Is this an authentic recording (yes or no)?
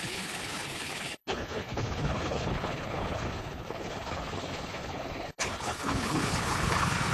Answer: no